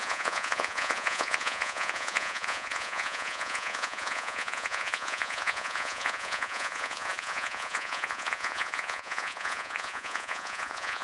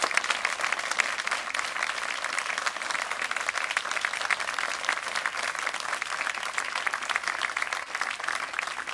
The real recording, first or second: second